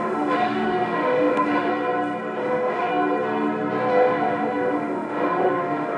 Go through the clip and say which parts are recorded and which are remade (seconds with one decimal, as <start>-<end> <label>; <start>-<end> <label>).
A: 0.0-1.7 remade; 1.7-2.4 recorded; 2.4-2.9 remade; 2.9-3.9 recorded; 3.9-6.0 remade